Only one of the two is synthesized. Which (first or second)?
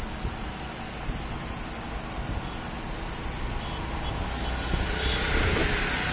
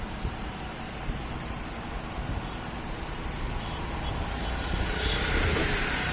second